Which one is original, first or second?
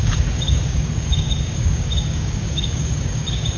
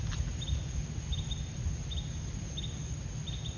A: second